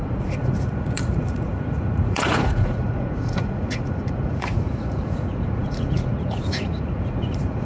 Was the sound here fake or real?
fake